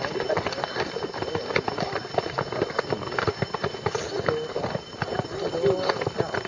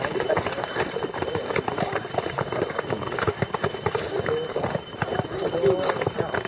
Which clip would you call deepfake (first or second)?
second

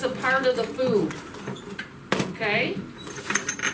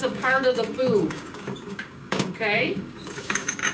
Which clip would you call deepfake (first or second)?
second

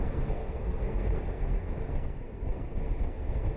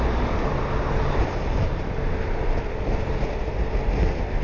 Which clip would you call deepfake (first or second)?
first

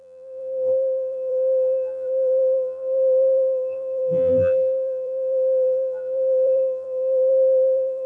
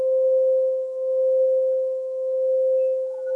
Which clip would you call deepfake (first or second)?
first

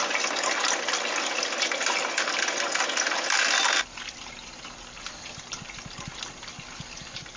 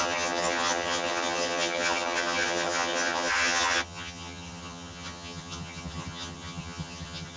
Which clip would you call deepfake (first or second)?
second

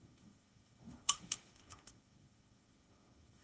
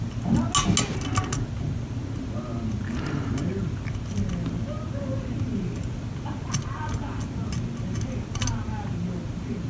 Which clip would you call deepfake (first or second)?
first